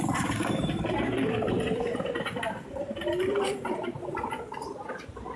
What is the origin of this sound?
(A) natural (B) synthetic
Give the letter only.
B